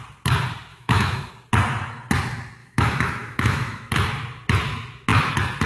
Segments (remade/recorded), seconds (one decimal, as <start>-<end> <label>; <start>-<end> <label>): 0.0-0.7 recorded; 0.7-1.3 remade; 1.3-2.6 recorded; 2.6-3.9 remade; 3.9-5.7 recorded